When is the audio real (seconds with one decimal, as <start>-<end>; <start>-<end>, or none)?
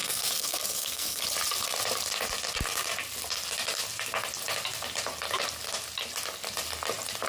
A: 1.2-7.3